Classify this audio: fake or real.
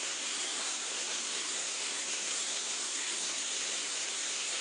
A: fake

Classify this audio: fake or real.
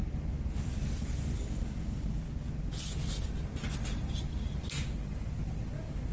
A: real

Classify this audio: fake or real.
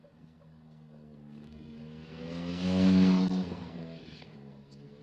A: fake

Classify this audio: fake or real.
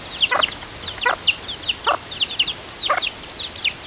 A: real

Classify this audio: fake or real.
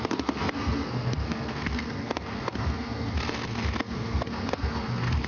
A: fake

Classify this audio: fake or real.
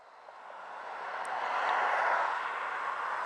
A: real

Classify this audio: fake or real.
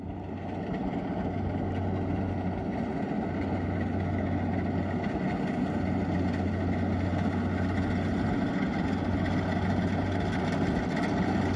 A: real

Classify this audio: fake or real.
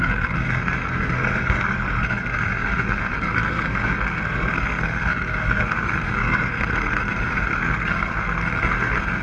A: fake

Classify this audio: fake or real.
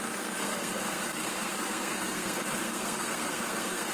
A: fake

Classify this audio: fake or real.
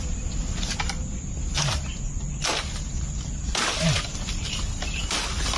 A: real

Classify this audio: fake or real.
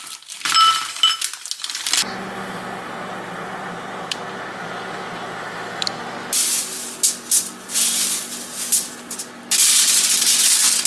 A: real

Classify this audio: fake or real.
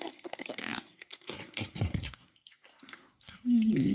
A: fake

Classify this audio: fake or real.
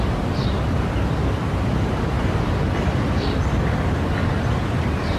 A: real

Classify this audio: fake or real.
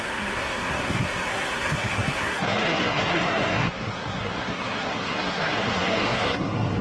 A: fake